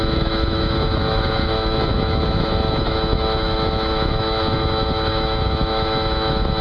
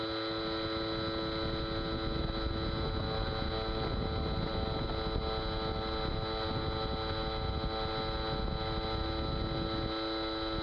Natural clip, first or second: second